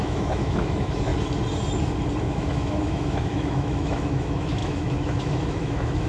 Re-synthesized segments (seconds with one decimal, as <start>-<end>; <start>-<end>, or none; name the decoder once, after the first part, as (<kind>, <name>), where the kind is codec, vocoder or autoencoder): 0.0-1.1 (autoencoder, DAC-VAE); 2.2-6.1